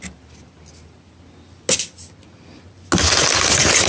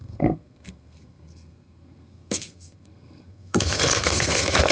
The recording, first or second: first